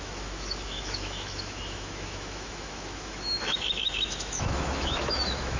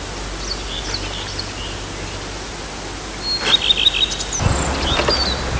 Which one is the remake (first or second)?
first